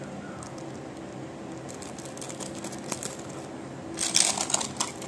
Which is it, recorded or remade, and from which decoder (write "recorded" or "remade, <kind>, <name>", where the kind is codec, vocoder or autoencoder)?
recorded